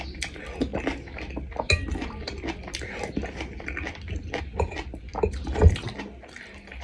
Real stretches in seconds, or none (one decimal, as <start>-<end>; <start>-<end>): 0.0-6.8

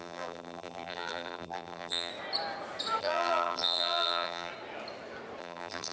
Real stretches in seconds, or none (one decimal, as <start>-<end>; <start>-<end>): 2.1-3.0; 4.5-5.4

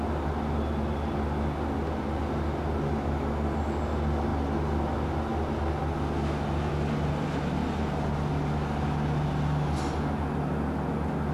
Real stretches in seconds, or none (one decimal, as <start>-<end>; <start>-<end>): 0.0-11.3

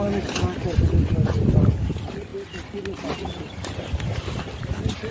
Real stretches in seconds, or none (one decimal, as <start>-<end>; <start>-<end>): 0.0-5.1

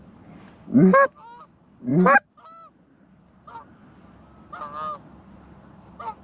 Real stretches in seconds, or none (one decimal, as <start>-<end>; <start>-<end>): 0.0-6.2

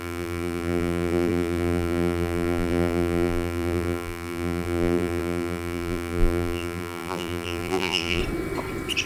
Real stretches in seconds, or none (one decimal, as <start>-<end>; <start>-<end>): 8.2-9.1

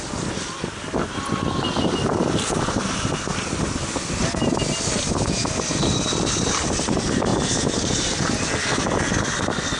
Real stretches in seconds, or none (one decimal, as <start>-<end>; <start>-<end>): 0.0-3.3; 4.1-7.3; 8.5-9.8